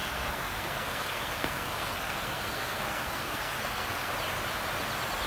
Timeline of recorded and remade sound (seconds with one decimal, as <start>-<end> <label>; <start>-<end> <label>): 0.0-4.1 remade; 4.1-5.3 recorded